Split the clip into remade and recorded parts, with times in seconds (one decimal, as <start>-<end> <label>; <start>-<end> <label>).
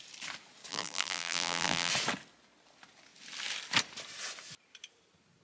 0.0-0.7 recorded; 0.7-1.9 remade; 1.9-5.4 recorded